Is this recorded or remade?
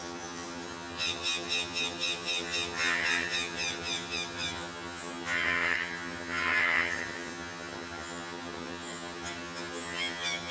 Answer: remade